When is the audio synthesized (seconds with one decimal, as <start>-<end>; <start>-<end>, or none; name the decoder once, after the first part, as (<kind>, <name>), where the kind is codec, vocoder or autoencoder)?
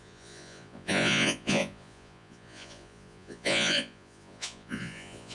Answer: 0.0-5.3 (vocoder, Vocos)